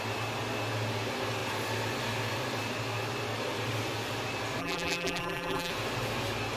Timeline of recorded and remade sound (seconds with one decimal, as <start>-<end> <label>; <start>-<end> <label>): 0.0-4.6 recorded; 4.6-5.7 remade; 5.7-6.6 recorded